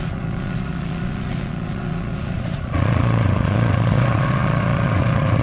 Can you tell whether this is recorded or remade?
remade